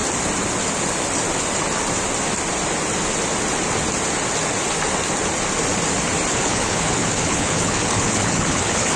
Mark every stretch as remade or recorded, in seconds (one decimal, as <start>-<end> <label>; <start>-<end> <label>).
0.0-6.3 recorded; 6.3-9.0 remade